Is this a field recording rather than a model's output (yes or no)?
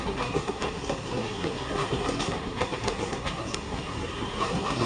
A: no